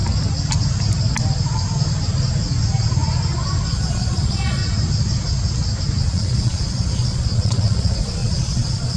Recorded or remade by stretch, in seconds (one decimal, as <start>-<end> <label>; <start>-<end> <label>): 0.0-3.7 recorded; 3.7-4.6 remade; 4.6-6.0 recorded; 6.0-9.0 remade